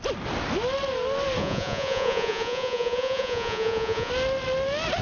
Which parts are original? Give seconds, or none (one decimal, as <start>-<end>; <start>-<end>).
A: 0.0-1.4; 4.1-5.0